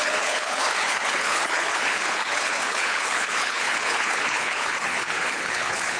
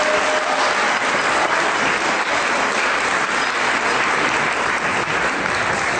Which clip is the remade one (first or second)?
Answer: first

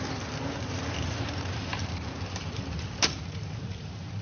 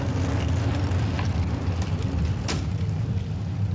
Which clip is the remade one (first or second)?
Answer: first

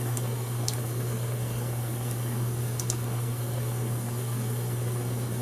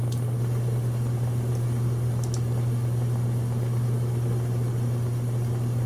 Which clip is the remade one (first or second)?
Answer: first